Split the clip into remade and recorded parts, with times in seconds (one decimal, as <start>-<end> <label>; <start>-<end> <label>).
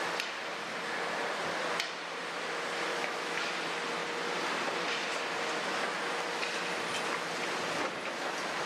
0.0-2.9 recorded; 2.9-3.5 remade; 3.5-8.7 recorded